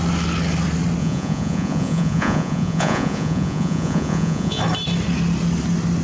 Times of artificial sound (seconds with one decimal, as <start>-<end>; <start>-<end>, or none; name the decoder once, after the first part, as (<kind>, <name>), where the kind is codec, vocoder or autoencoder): 1.0-4.6 (vocoder, Vocos)